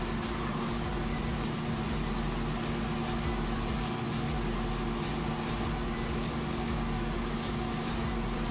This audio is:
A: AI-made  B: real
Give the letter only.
B